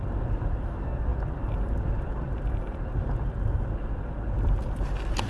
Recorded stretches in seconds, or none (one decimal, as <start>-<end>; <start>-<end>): 0.0-5.3